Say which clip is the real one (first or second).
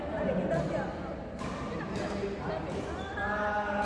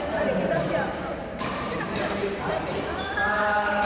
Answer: first